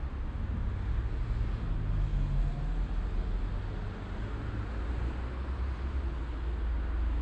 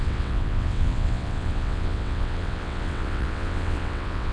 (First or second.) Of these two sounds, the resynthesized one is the second